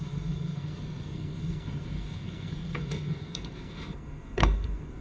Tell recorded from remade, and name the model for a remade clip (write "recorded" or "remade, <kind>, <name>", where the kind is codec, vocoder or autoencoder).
remade, codec, SNAC